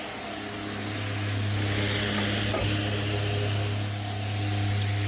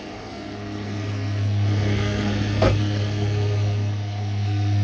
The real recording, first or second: first